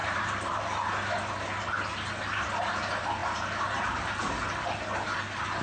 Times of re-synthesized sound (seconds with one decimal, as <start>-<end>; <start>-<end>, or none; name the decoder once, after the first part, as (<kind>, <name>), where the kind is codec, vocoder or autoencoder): 0.0-0.7 (vocoder, BigVGAN v2); 3.2-4.2